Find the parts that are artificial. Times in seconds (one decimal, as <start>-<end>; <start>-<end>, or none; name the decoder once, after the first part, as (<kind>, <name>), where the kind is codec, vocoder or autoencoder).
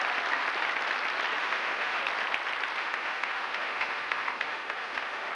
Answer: 1.4-2.0 (autoencoder, DAC-VAE); 2.8-5.3